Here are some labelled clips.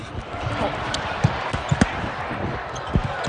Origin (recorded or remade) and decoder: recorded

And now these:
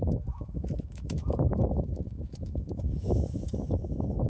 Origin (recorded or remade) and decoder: remade, autoencoder, DAC-VAE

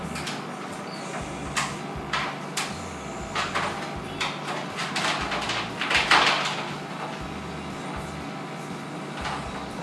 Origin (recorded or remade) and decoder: recorded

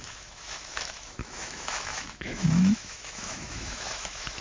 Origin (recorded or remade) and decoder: remade, autoencoder, DAC-VAE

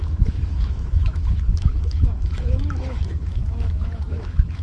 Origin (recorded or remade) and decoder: remade, autoencoder, DAC-VAE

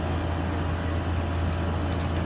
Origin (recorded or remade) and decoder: recorded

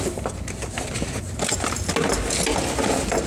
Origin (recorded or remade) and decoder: recorded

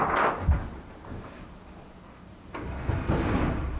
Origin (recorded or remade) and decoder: recorded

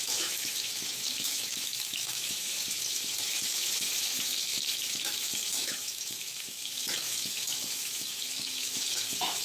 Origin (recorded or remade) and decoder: remade, autoencoder, DAC-VAE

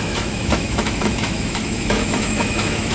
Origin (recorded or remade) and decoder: remade, autoencoder, DAC-VAE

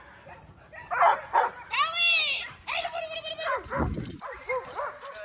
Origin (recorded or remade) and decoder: recorded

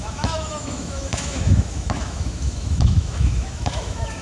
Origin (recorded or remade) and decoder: remade, autoencoder, DAC-VAE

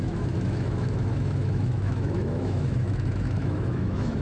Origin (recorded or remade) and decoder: remade, autoencoder, DAC-VAE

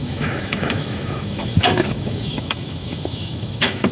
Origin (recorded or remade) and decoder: remade, autoencoder, DAC-VAE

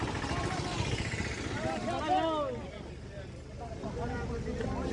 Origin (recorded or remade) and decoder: recorded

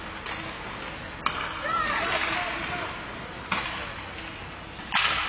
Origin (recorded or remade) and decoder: recorded